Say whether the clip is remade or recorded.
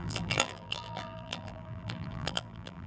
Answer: remade